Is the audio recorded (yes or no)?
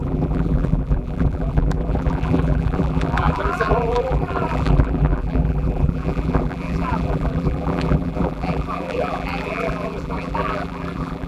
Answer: no